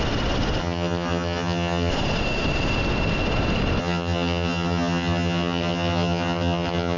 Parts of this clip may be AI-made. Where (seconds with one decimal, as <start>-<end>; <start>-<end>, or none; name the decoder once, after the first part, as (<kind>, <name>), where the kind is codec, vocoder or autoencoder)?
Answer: 0.6-1.9 (vocoder, HiFi-GAN); 3.8-7.0